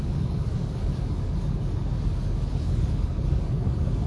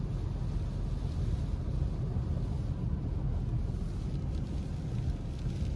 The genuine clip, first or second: second